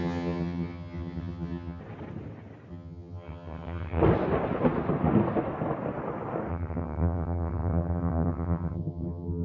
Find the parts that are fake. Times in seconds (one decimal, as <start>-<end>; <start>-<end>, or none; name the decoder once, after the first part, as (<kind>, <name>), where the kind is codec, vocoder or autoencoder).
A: 0.0-1.8 (vocoder, HiFi-GAN); 2.7-4.0; 6.5-9.4